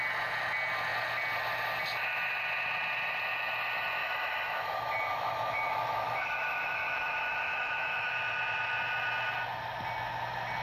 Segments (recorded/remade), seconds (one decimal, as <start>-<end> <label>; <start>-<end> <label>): 0.0-4.0 recorded; 4.0-8.1 remade; 8.1-10.6 recorded